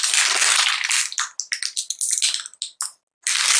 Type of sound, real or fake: real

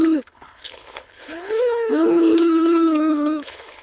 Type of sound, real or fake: fake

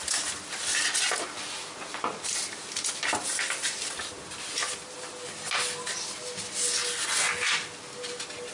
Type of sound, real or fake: real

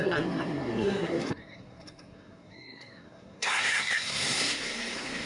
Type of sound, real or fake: fake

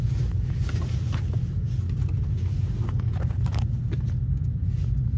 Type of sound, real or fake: real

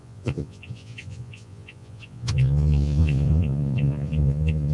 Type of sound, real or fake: fake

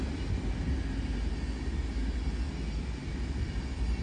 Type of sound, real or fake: real